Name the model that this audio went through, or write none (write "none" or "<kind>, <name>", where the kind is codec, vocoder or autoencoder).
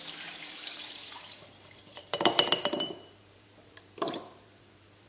vocoder, BigVGAN v2